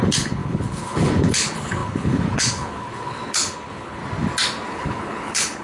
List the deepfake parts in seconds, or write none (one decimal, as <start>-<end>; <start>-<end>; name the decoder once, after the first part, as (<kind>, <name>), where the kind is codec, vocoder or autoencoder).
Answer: 0.0-4.0 (codec, HILCodec); 4.7-5.6